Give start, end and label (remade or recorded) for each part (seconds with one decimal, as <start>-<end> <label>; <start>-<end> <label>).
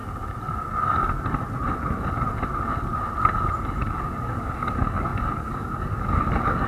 0.0-3.8 recorded; 3.8-6.7 remade